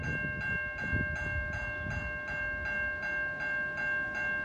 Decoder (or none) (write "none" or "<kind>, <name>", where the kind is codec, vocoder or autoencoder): none